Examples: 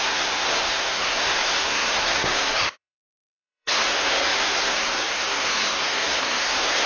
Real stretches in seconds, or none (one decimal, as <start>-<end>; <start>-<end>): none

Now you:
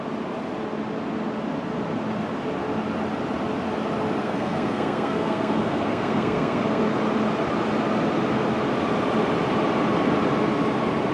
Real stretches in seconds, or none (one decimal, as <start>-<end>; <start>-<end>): 0.0-4.2; 6.8-11.1

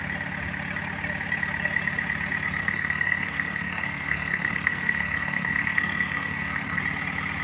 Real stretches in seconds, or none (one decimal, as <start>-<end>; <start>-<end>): 0.0-2.6; 6.8-7.4

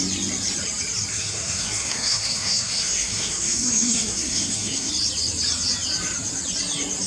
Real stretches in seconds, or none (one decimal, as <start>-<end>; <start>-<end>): 0.0-1.1; 4.9-7.1

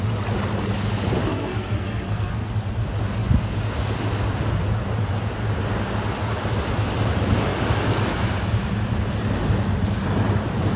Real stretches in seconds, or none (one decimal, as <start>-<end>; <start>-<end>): 0.0-1.3; 2.5-10.8